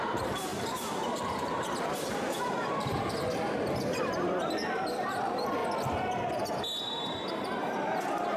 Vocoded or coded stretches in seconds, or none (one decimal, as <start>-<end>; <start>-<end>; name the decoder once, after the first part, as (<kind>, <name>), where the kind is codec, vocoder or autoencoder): 0.0-5.6 (vocoder, BigVGAN v2); 6.8-8.4